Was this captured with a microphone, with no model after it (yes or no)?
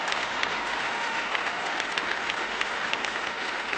no